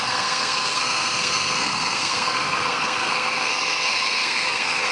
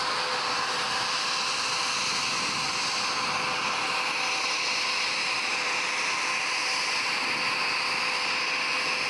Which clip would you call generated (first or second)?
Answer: first